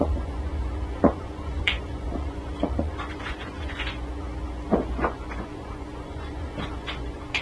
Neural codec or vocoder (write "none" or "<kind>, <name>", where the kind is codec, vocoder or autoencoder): vocoder, Vocos